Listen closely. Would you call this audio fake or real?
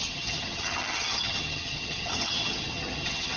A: fake